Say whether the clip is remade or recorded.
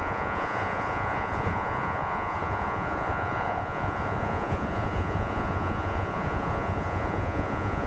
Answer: remade